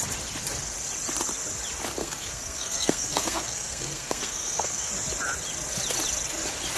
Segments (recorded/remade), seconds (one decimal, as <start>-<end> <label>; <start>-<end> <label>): 0.0-2.0 recorded; 2.0-4.9 remade; 4.9-6.8 recorded